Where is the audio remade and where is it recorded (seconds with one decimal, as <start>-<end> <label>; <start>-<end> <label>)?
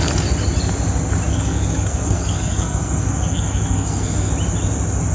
0.0-1.3 recorded; 1.3-4.3 remade; 4.3-5.1 recorded